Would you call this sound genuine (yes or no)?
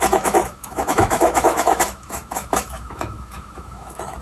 no